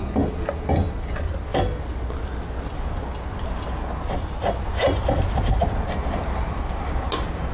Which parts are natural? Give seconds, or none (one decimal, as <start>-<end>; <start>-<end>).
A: 0.0-7.5